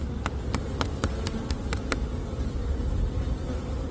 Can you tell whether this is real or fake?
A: real